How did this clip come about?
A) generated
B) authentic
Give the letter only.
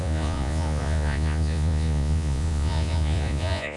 A